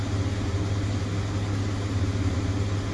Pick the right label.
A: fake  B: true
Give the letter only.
B